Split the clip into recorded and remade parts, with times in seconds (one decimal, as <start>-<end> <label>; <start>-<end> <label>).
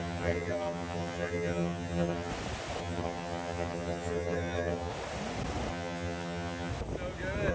0.0-2.3 remade; 2.3-2.8 recorded; 2.8-4.9 remade; 4.9-5.7 recorded; 5.7-6.7 remade; 6.7-7.5 recorded